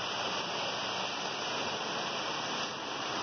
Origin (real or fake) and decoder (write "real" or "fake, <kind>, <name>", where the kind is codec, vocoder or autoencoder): real